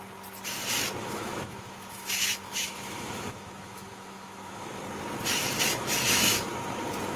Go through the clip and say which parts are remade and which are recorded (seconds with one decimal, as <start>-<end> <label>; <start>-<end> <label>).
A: 0.0-1.0 recorded; 1.0-4.8 remade; 4.8-5.7 recorded; 5.7-6.5 remade; 6.5-7.2 recorded